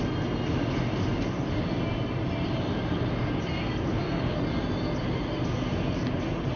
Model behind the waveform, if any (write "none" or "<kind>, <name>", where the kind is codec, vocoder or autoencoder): none